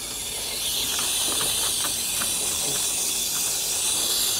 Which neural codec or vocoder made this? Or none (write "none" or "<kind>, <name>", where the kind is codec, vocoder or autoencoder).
none